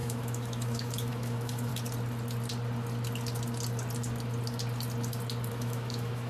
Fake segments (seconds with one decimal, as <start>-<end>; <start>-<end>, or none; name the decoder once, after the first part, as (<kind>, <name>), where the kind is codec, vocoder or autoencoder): 0.0-1.7 (autoencoder, DAC-VAE); 5.5-6.3